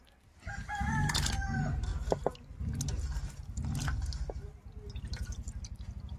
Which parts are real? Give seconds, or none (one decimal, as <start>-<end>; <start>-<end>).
0.0-6.2

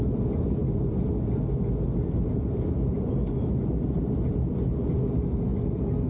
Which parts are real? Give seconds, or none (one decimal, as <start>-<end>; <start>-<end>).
0.0-6.1